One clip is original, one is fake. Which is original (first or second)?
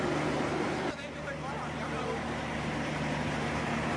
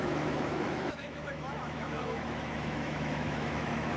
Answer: first